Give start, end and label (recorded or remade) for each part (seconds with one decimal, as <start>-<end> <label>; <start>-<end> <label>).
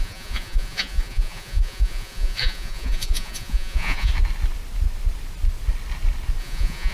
0.0-4.1 remade; 4.1-6.4 recorded; 6.4-6.9 remade